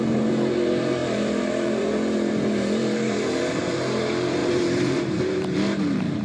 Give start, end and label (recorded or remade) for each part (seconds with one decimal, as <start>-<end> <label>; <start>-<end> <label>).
0.0-6.2 remade